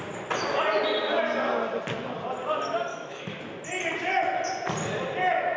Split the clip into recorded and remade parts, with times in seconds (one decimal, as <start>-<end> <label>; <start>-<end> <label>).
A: 0.0-2.9 recorded; 2.9-3.4 remade; 3.4-5.6 recorded